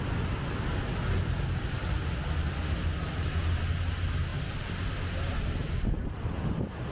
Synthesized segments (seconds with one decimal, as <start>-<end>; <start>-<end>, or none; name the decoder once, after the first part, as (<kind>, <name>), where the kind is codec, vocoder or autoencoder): none

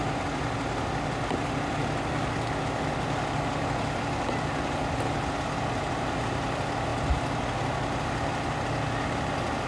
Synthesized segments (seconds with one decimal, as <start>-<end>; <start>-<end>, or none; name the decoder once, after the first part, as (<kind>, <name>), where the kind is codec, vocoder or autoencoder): none

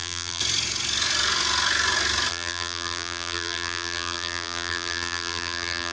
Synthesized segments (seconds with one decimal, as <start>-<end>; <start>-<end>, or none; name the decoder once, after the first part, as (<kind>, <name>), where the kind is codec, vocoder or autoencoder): 0.0-0.4 (vocoder, BigVGAN v2); 2.3-5.9

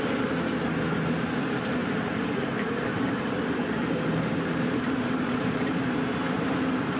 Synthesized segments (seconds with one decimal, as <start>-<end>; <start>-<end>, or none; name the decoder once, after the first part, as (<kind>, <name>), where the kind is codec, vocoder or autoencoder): 1.8-6.0 (vocoder, BigVGAN v2)

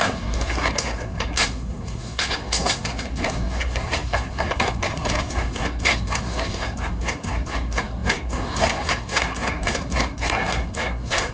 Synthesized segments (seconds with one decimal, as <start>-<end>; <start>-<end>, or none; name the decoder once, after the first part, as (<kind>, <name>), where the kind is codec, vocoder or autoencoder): 0.0-11.3 (codec, SNAC)